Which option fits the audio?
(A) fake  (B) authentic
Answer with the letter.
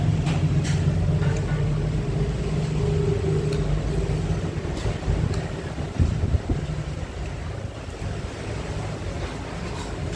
B